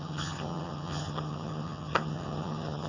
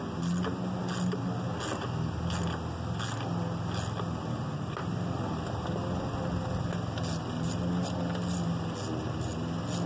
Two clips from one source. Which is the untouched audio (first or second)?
second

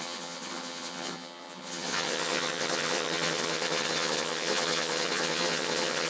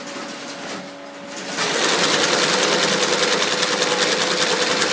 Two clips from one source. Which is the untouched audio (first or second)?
second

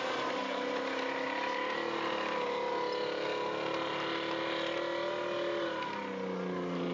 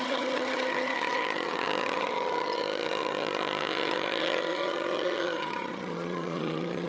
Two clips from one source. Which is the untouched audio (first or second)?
first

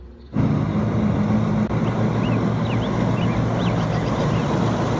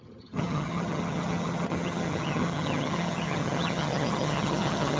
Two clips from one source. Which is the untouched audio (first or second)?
first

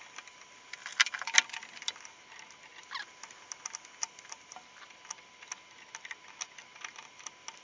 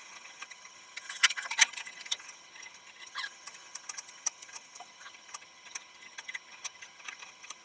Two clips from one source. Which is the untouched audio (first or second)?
first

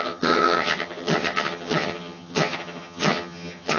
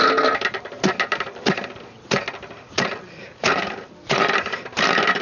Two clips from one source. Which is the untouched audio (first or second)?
second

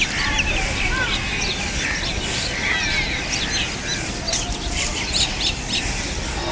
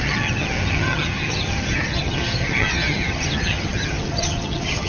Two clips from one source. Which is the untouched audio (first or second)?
first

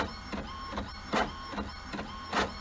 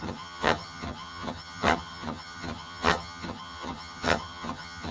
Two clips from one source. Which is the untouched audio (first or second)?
first